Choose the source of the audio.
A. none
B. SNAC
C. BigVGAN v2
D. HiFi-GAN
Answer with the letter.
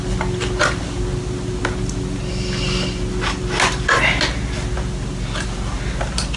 A